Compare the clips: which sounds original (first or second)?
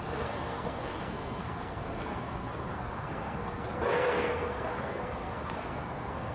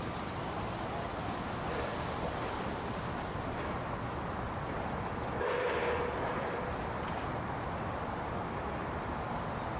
second